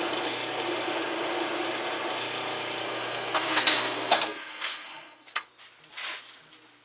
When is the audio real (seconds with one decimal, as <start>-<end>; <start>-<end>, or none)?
0.0-2.8; 5.5-6.8